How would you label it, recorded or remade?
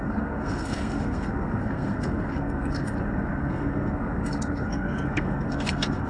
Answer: remade